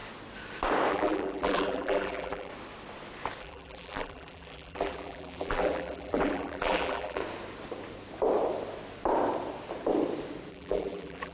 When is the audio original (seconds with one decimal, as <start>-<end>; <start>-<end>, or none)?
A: 0.0-0.9; 2.5-3.4; 7.2-10.5